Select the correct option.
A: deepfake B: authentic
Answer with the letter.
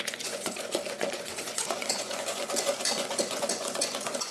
A